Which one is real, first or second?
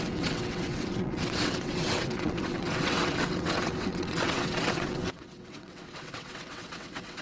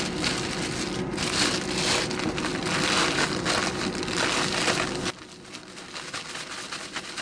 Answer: second